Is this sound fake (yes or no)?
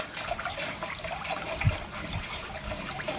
no